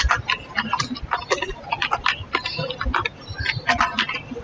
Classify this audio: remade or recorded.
recorded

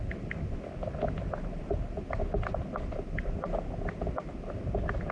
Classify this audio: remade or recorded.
recorded